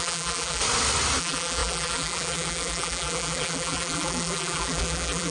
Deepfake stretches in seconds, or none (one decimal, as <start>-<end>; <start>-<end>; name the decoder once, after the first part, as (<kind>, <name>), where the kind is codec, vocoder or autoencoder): 0.0-0.6 (vocoder, BigVGAN v2); 1.2-5.3